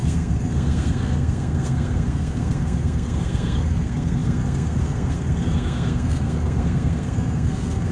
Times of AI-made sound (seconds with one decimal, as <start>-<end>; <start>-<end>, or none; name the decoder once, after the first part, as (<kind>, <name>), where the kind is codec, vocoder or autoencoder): 0.0-7.9 (codec, SNAC)